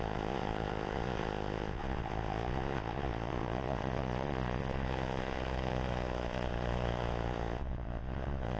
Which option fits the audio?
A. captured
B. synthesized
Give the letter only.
B